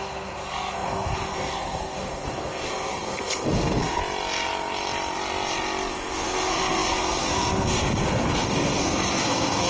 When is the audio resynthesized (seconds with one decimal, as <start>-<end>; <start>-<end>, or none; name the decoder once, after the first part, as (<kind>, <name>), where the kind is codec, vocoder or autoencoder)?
0.0-4.0 (codec, SNAC); 5.9-9.7